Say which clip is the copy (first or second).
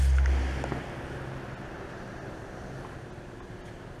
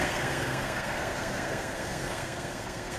second